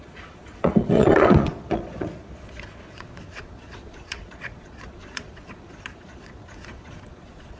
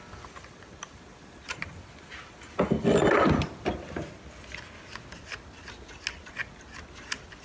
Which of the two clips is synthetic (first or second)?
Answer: first